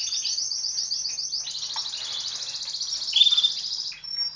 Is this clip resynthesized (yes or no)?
no